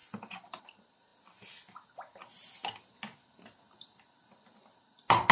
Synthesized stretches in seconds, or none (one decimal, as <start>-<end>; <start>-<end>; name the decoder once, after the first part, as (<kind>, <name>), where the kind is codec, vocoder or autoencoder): none

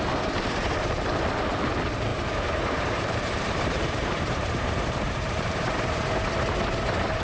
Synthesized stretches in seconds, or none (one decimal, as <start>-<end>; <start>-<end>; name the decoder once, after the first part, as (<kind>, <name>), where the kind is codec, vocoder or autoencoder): 2.1-6.1 (vocoder, BigVGAN v2)

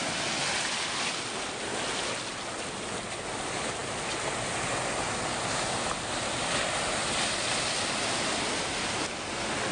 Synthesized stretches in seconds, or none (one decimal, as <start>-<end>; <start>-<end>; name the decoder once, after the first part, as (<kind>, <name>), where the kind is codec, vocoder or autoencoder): none

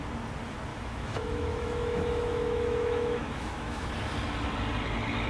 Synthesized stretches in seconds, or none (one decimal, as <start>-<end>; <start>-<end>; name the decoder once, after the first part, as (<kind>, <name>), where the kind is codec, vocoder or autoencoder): 0.7-3.9 (autoencoder, DAC-VAE)